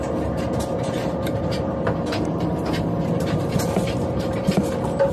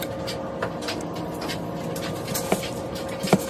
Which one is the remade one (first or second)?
first